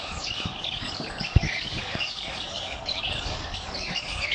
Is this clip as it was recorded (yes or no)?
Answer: no